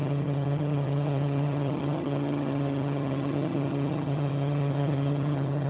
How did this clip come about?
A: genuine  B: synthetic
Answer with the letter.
B